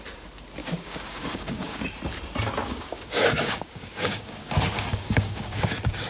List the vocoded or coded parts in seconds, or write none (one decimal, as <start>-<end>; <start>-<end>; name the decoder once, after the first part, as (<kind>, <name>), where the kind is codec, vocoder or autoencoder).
0.6-1.8 (codec, DAC); 2.6-6.1

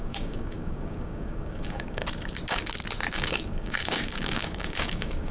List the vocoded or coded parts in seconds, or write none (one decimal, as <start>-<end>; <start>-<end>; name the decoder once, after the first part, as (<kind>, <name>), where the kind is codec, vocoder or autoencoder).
0.0-2.0 (codec, DAC); 3.1-5.3

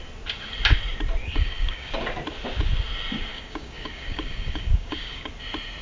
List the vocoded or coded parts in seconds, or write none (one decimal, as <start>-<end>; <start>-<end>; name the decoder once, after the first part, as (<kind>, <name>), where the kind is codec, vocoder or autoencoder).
1.2-1.9 (codec, DAC); 3.3-5.3